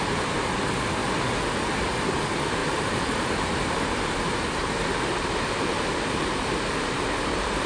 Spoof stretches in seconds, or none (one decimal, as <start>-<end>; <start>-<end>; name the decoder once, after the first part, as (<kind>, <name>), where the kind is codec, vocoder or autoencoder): 0.0-1.0 (vocoder, BigVGAN v2); 2.0-7.7